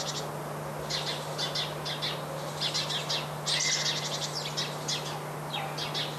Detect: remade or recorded recorded